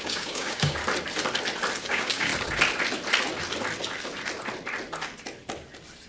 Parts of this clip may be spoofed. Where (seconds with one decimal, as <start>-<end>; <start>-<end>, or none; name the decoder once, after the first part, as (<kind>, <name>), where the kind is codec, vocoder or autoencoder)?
0.0-0.8 (codec, DAC); 1.8-2.3